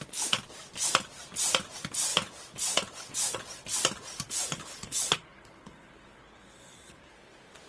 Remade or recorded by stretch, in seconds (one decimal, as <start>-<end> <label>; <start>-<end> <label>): 0.0-4.5 recorded; 4.5-7.1 remade; 7.1-7.7 recorded